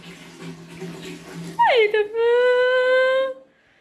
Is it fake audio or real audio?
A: real